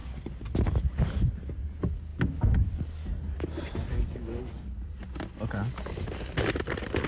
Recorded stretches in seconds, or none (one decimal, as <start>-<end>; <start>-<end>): 0.0-7.1